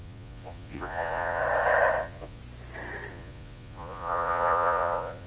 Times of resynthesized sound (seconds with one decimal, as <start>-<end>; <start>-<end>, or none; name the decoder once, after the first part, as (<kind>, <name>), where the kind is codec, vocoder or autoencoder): 0.0-1.4 (vocoder, Vocos); 2.0-2.4; 3.1-5.3